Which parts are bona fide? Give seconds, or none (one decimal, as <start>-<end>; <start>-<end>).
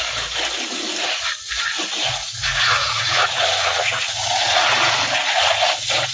0.0-2.0; 5.4-6.1